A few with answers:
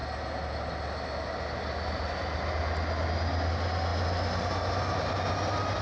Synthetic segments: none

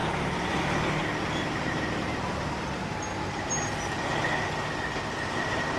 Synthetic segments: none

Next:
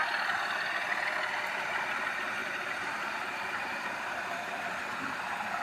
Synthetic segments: 2.4-4.7 (vocoder, BigVGAN v2)

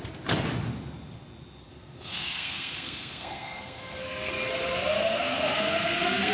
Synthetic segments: 1.6-4.3 (codec, SNAC); 5.0-6.3

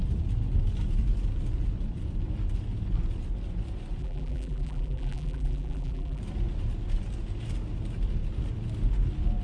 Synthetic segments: 4.0-6.2 (vocoder, BigVGAN v2)

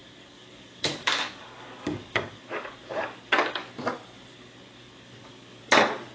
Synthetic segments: 0.0-3.7 (codec, DAC); 4.3-5.6

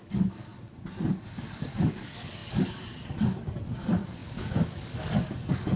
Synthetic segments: 0.0-0.5 (codec, DAC); 1.4-5.8